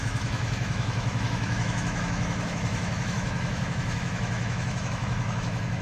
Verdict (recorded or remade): remade